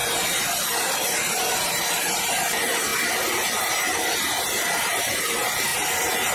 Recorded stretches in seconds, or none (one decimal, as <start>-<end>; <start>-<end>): 0.0-6.3